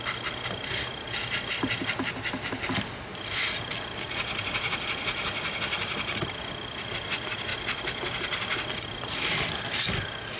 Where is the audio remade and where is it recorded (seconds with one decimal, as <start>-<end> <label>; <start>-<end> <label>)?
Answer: 0.0-10.4 recorded